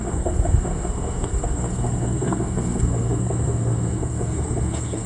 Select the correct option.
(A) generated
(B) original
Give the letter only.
A